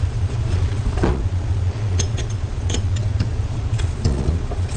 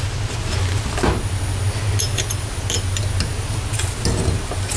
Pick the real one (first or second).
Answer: second